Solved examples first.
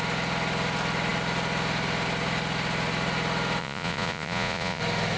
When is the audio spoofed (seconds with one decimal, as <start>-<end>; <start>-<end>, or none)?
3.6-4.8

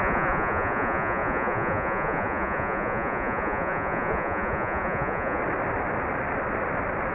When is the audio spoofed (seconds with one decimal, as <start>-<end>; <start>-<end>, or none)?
0.0-5.4

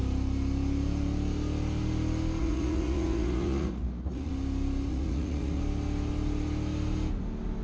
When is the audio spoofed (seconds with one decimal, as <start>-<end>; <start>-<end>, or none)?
2.4-4.3; 4.9-5.6

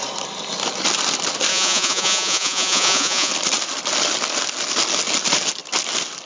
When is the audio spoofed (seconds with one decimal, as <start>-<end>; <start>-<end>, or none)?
1.5-3.3

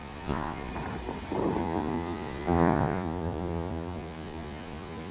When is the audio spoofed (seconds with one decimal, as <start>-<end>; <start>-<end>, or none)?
0.0-0.7; 1.6-5.1

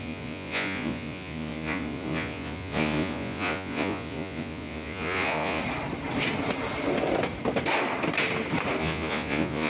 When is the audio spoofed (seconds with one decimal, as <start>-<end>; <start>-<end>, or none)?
0.0-5.6; 8.8-9.7

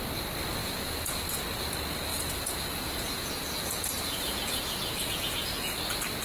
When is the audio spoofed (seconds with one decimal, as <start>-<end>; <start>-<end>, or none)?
0.6-1.4; 2.1-5.8

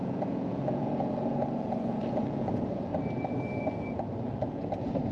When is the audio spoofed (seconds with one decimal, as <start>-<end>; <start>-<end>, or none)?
0.0-2.9; 3.6-5.1